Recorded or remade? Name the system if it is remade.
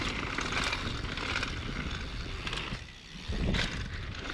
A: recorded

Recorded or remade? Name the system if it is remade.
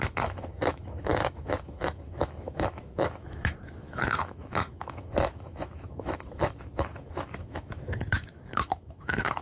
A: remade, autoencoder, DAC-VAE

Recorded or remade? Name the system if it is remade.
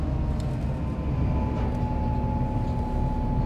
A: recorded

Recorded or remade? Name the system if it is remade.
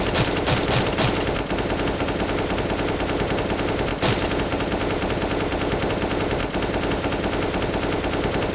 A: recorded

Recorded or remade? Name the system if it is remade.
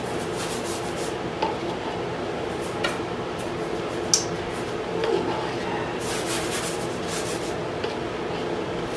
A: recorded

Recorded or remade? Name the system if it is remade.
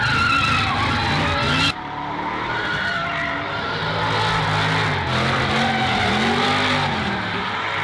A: recorded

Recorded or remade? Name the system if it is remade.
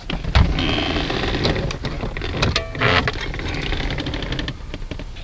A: recorded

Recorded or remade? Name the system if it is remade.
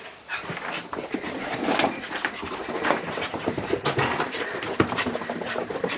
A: remade, vocoder, BigVGAN v2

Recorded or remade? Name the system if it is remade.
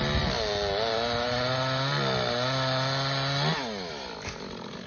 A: recorded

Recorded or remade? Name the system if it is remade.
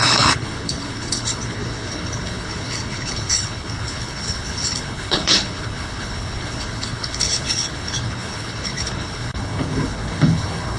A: remade, codec, HILCodec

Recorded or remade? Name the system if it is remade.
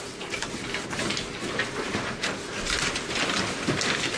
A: recorded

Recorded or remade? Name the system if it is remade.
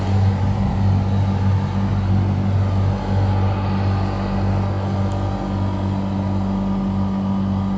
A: recorded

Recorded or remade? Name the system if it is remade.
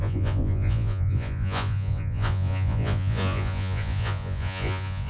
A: remade, vocoder, Vocos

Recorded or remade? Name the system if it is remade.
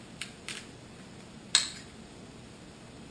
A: recorded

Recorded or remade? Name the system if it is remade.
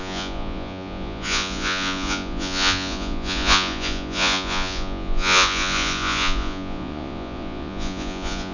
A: remade, vocoder, Vocos